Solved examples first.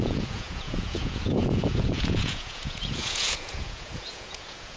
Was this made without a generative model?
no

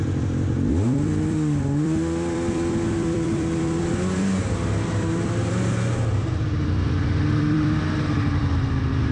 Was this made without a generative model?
no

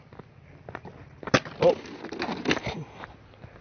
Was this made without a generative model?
yes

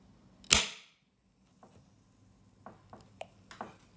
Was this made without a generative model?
yes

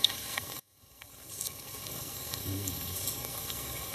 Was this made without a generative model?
no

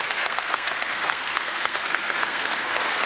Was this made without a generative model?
no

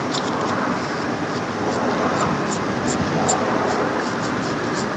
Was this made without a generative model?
yes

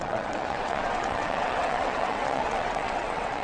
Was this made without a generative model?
no